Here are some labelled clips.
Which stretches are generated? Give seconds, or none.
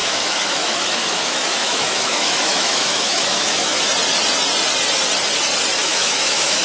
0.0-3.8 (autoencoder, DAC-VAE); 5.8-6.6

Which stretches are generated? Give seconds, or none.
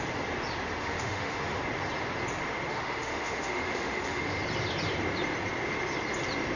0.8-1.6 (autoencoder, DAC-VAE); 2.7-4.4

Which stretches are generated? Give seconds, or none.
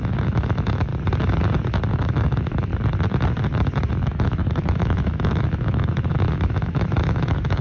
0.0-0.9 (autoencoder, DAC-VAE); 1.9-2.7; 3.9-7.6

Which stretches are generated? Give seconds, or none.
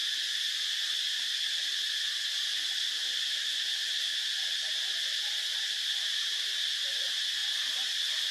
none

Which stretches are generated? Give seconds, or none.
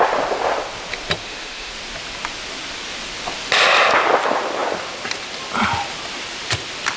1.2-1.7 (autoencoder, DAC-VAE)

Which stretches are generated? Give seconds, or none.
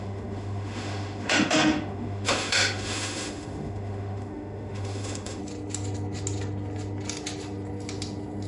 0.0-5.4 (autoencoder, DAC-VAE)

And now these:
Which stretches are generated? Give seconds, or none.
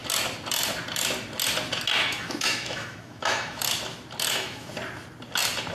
2.0-3.6 (autoencoder, DAC-VAE); 4.3-4.7